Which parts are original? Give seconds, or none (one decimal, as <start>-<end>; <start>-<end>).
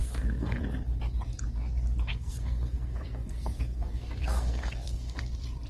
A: 0.6-2.1; 5.2-5.7